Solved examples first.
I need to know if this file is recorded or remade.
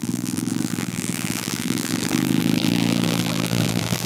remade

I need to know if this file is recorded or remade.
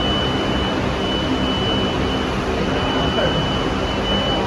recorded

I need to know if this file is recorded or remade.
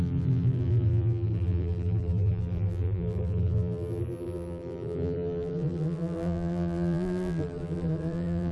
remade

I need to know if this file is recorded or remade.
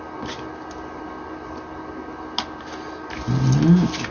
recorded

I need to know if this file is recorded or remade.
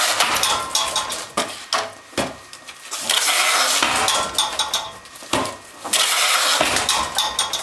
recorded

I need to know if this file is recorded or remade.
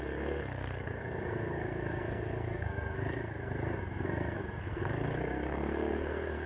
remade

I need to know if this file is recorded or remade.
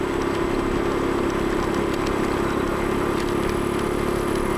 recorded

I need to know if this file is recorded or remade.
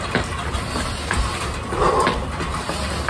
recorded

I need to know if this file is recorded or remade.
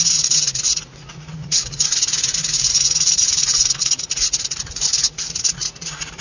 remade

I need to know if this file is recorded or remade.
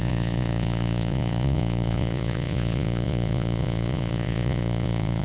remade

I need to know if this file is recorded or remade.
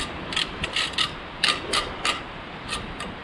remade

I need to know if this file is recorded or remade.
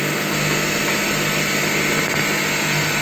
recorded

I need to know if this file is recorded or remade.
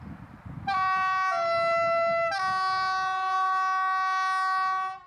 recorded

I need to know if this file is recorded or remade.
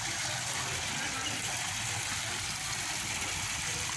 recorded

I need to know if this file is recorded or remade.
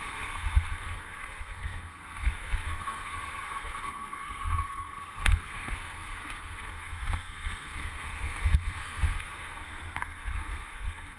remade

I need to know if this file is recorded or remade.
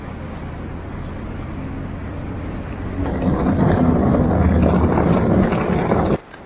recorded